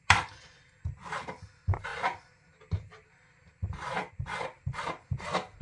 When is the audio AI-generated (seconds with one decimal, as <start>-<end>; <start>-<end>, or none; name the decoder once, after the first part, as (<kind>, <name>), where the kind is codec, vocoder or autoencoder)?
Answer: none